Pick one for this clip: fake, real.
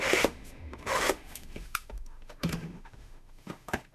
fake